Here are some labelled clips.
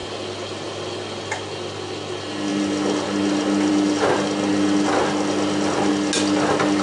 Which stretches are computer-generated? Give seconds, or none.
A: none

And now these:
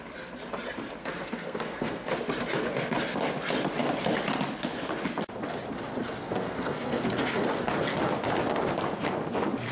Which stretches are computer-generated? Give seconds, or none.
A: 1.0-2.1 (codec, SNAC); 6.2-7.0

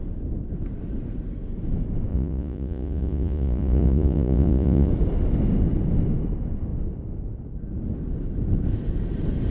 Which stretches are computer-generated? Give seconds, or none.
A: 2.1-4.9 (vocoder, Vocos)

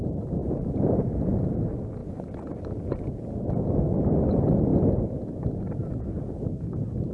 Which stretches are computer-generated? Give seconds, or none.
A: 0.4-1.5 (vocoder, BigVGAN v2); 2.0-3.1

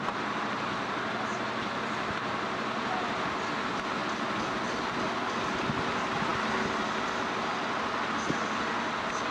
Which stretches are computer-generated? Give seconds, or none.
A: none